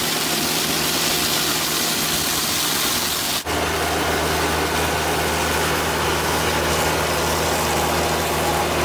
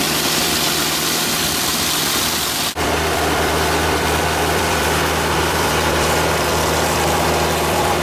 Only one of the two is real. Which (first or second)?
first